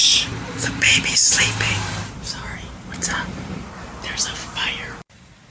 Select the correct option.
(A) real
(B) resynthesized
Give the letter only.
B